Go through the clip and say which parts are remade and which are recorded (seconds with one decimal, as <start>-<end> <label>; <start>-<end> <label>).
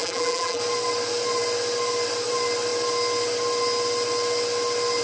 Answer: 0.0-0.6 remade; 0.6-5.0 recorded